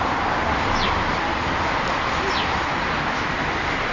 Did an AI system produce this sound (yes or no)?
yes